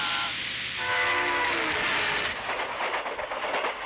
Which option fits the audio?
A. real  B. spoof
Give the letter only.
A